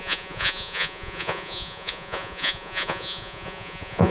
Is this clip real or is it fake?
fake